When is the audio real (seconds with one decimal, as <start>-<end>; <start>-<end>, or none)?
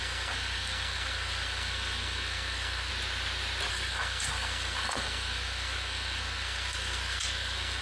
2.9-3.7